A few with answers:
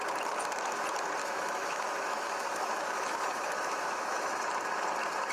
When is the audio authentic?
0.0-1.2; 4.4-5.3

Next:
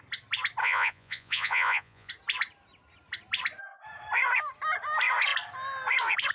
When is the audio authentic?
0.0-0.6; 2.1-6.3